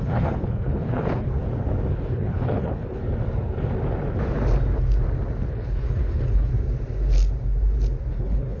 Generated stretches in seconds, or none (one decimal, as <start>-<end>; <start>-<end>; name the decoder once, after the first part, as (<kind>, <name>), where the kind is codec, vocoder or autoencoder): 0.0-1.3 (codec, HILCodec); 1.9-3.0; 5.5-6.5; 8.1-8.6